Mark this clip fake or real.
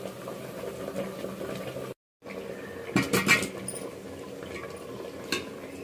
real